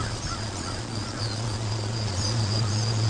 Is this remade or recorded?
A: remade